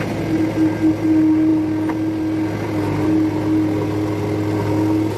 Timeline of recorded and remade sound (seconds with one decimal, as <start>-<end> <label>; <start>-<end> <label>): 0.0-5.2 recorded

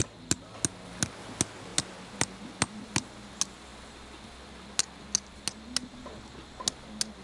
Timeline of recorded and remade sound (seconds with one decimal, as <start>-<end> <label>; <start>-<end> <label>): 0.0-7.2 recorded

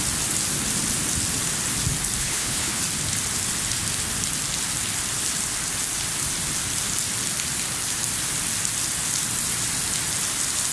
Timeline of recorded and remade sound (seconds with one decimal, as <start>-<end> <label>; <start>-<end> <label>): 0.0-2.2 recorded; 2.2-2.8 remade; 2.8-10.7 recorded

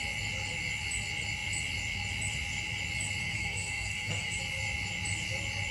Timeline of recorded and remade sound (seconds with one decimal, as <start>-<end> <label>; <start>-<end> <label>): 0.0-3.2 recorded; 3.2-4.4 remade; 4.4-5.7 recorded

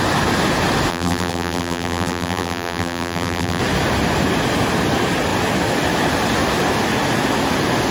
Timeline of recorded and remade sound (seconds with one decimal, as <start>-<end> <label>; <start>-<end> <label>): 0.0-0.9 recorded; 0.9-3.6 remade; 3.6-7.9 recorded

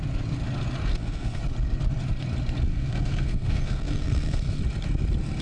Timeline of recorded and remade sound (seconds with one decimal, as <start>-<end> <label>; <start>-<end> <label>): 0.0-0.9 recorded; 0.9-1.4 remade; 1.4-2.7 recorded; 2.7-4.6 remade; 4.6-5.4 recorded

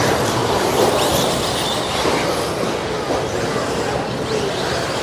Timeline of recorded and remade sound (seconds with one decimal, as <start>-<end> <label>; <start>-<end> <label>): 0.0-5.0 recorded

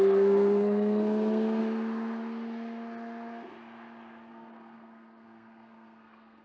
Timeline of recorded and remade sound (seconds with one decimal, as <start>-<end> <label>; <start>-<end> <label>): 0.0-1.6 remade; 1.6-4.3 recorded; 4.3-6.4 remade